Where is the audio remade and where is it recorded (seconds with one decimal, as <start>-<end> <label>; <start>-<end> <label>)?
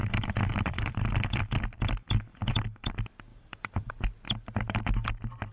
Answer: 0.0-1.4 remade; 1.4-2.3 recorded; 2.3-2.9 remade; 2.9-3.3 recorded; 3.3-3.9 remade; 3.9-5.5 recorded